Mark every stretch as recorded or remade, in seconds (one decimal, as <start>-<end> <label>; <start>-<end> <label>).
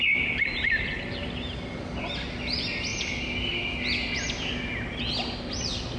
0.0-6.0 recorded